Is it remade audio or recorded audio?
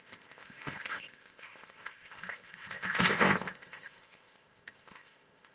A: remade